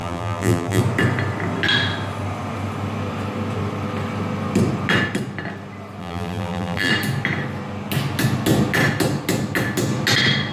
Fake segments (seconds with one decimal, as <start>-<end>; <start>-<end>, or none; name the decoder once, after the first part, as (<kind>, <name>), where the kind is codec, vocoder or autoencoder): 0.0-0.8 (vocoder, BigVGAN v2); 6.0-6.9